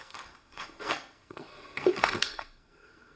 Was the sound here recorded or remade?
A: remade